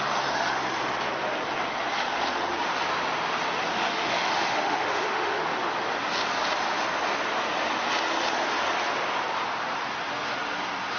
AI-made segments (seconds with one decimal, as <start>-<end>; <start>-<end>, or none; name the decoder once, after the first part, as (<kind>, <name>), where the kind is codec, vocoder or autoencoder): 3.7-5.4 (autoencoder, DAC-VAE)